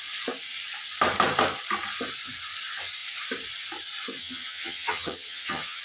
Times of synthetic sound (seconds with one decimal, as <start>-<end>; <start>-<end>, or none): 4.2-5.8